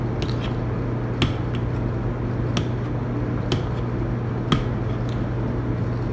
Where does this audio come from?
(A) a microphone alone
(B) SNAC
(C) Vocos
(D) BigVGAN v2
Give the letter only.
A